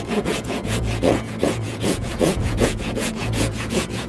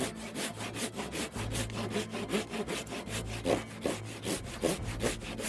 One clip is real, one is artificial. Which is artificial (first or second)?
first